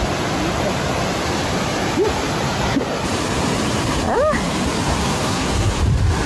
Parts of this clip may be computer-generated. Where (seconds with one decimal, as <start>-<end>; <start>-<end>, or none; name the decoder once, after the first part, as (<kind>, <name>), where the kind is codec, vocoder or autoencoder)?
5.0-5.7 (codec, SNAC)